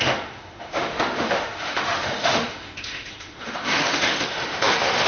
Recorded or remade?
remade